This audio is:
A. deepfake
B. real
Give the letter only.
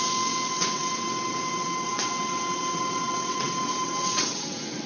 A